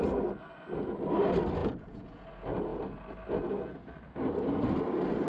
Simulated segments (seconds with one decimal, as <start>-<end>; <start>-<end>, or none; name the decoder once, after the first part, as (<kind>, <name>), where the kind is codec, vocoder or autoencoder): 1.6-2.2 (vocoder, Vocos)